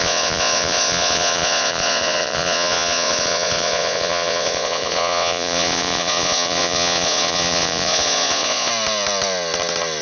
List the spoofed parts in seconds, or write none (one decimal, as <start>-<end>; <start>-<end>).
0.0-8.7